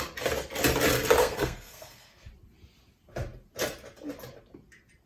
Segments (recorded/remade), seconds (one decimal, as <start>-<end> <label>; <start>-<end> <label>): 0.0-1.2 recorded; 1.2-2.3 remade; 2.3-5.1 recorded